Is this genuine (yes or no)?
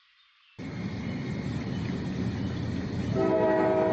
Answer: yes